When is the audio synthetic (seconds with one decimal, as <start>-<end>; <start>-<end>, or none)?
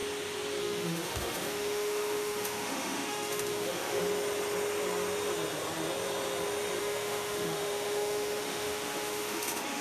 0.6-4.0; 6.8-9.8